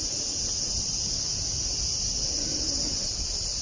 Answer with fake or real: real